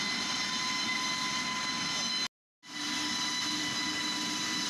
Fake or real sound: real